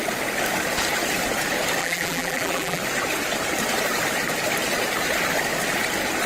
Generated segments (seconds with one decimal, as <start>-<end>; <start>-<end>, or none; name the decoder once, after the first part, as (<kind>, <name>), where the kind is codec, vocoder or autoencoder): 1.8-2.8 (vocoder, BigVGAN v2)